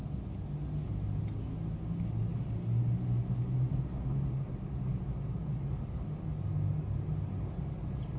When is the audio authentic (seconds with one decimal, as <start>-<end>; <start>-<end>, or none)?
0.0-8.2